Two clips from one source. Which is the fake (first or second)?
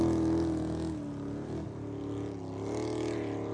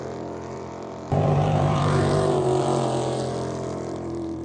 second